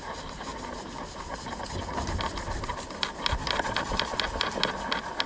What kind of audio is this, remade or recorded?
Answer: recorded